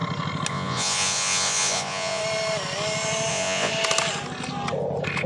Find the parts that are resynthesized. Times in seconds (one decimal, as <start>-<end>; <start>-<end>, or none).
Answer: 0.5-2.2; 3.3-3.7